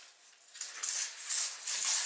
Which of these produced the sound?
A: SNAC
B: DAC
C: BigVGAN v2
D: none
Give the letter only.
D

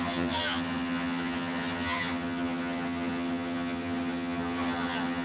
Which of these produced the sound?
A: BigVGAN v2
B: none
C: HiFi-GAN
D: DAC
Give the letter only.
C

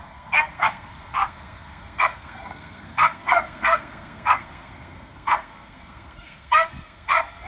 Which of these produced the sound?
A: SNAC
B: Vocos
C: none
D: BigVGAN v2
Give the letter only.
A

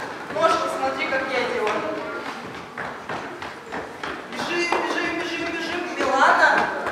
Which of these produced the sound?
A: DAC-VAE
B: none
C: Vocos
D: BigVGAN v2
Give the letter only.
B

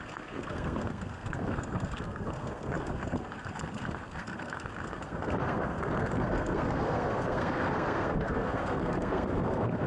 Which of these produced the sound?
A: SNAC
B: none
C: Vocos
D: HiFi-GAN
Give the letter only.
A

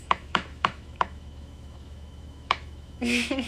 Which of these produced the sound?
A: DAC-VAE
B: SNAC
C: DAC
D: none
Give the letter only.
A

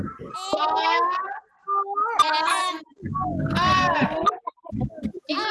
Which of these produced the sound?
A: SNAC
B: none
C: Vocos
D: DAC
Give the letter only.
B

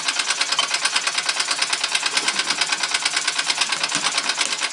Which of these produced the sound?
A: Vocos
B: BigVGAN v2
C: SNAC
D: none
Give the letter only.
D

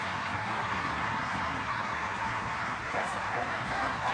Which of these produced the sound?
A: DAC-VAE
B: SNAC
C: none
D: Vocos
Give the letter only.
B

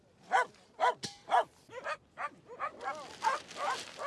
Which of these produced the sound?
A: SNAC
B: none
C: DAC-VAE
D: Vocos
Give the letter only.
B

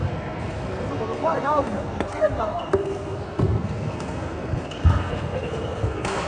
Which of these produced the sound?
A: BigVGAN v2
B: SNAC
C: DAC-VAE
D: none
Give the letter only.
B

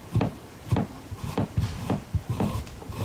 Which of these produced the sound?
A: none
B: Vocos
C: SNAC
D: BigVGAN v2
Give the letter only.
D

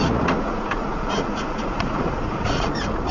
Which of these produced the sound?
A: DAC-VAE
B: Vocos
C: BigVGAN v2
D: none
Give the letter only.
B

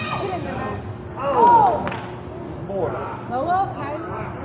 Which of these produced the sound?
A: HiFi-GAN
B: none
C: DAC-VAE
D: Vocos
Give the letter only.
B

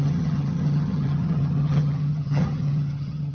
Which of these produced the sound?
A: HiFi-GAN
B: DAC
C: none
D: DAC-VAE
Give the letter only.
A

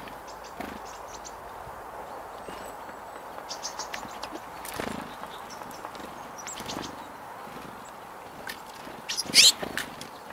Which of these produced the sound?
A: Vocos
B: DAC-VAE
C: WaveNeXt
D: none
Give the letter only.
D